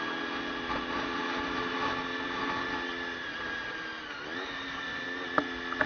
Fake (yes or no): no